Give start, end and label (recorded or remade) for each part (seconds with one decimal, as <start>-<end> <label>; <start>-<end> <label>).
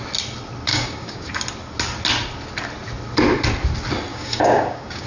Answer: 0.0-0.7 recorded; 0.7-1.3 remade; 1.3-4.1 recorded; 4.1-5.1 remade